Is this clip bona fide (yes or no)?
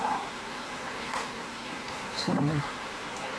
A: no